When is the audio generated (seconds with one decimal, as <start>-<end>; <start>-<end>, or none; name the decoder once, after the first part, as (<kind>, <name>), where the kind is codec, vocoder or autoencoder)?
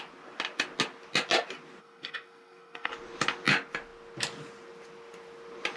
1.8-2.9 (codec, SNAC)